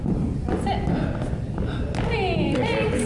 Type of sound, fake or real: real